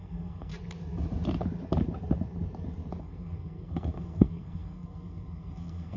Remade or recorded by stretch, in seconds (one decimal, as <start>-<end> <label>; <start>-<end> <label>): 0.0-0.5 remade; 0.5-3.0 recorded; 3.0-6.0 remade